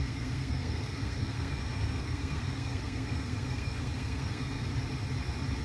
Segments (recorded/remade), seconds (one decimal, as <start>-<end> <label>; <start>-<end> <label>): 0.0-4.7 remade; 4.7-5.6 recorded